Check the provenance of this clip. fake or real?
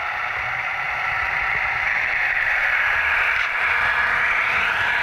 fake